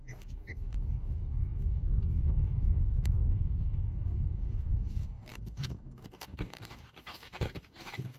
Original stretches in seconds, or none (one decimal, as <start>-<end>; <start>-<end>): none